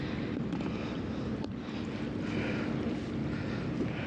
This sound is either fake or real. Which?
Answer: real